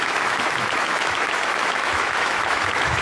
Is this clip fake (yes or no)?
yes